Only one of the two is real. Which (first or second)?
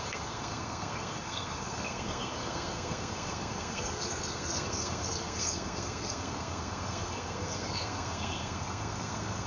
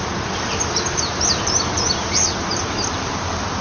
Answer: second